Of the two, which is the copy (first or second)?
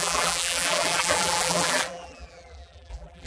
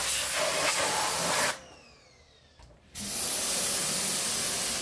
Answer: first